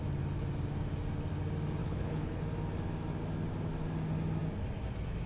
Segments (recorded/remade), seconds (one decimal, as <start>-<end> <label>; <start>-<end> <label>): 0.0-1.8 recorded; 1.8-2.4 remade; 2.4-5.3 recorded